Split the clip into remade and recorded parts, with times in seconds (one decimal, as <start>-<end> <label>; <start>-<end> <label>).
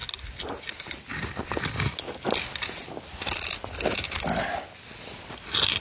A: 0.0-5.8 recorded